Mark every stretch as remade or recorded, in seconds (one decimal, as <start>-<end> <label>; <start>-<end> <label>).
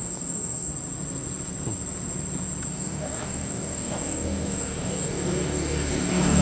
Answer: 0.0-0.7 remade; 0.7-2.7 recorded; 2.7-6.4 remade